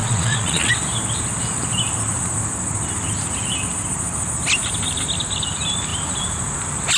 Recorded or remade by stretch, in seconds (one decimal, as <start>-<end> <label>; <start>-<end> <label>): 0.0-0.7 remade; 0.7-7.0 recorded